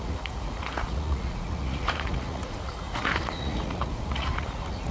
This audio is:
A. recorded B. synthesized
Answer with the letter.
B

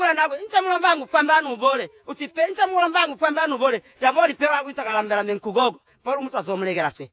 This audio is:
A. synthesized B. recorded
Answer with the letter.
A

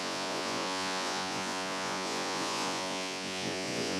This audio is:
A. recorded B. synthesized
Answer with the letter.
B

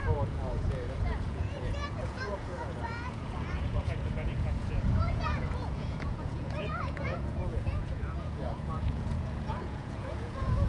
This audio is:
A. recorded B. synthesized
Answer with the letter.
B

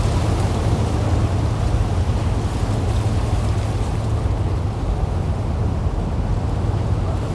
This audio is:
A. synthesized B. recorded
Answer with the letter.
B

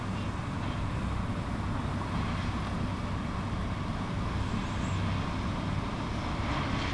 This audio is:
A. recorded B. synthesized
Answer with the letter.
A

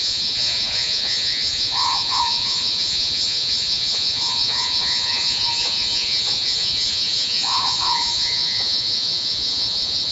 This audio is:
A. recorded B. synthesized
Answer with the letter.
B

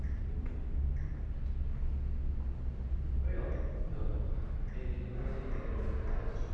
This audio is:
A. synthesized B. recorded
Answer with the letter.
B